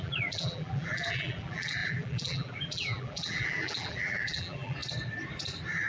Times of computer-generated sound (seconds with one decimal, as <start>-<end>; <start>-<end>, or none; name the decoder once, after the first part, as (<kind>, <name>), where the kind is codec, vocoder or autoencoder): 0.0-4.8 (vocoder, BigVGAN v2)